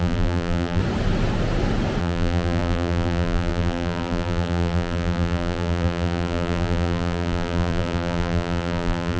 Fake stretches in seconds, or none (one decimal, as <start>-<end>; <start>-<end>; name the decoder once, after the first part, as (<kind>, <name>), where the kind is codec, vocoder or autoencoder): 0.0-0.8 (vocoder, BigVGAN v2); 2.0-9.2